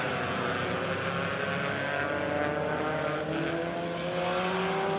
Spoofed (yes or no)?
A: no